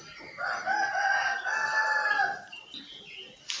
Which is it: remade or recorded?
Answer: recorded